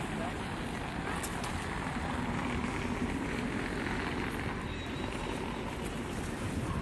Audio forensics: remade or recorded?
recorded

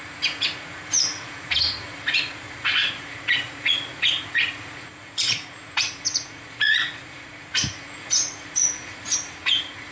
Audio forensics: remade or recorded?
remade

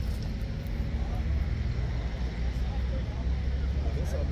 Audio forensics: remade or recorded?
recorded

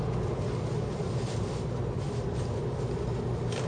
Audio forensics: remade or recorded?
recorded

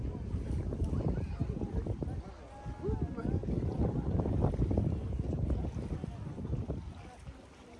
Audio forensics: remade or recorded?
recorded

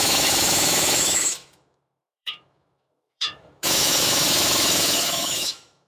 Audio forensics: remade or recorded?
remade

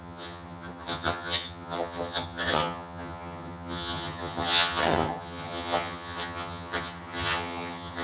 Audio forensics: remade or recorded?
remade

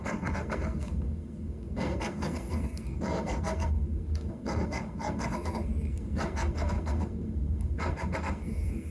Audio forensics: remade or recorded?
remade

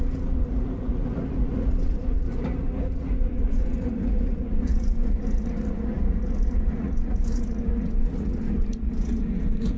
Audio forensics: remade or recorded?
remade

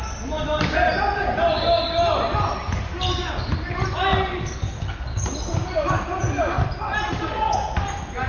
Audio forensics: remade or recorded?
recorded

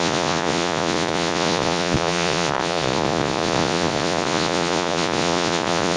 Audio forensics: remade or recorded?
remade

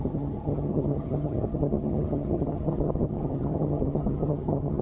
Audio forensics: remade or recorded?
remade